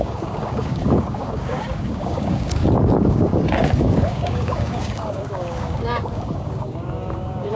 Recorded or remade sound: remade